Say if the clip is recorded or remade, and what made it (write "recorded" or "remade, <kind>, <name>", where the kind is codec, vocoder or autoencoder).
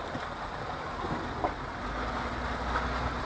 recorded